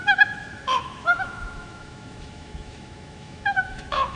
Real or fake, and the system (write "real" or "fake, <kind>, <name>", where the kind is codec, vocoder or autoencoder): fake, autoencoder, DAC-VAE